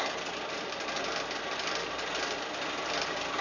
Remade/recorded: recorded